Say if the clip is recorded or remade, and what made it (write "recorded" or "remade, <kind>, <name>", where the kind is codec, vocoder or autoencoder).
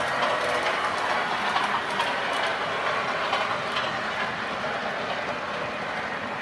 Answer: recorded